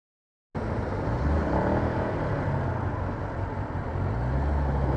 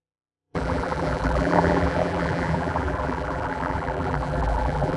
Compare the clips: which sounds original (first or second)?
first